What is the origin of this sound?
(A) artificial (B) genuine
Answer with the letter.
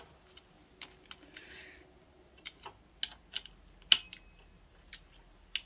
B